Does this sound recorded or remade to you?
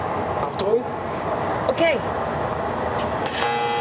recorded